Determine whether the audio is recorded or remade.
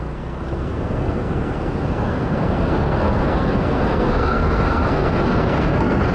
remade